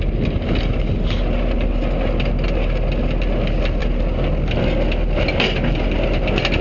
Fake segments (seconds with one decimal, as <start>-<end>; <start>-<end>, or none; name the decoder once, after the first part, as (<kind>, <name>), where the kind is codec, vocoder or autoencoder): none